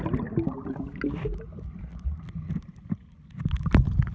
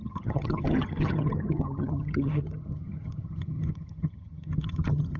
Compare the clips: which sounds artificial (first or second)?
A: second